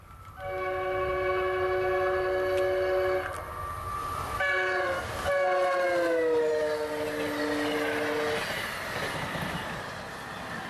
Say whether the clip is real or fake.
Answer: real